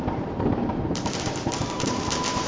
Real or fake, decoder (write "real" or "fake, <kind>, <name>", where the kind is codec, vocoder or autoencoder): fake, vocoder, BigVGAN v2